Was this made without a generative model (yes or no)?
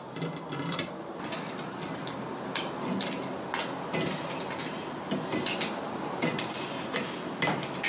yes